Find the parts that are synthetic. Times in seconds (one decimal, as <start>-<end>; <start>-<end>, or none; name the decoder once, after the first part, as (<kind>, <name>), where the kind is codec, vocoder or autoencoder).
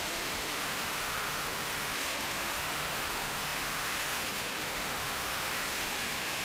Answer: 0.0-6.4 (autoencoder, DAC-VAE)